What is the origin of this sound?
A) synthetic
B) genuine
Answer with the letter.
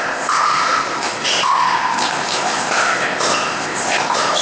A